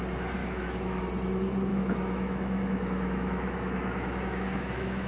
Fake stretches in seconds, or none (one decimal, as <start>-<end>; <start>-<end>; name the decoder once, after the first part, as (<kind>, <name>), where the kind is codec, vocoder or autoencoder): 0.4-1.0 (autoencoder, DAC-VAE); 1.7-5.1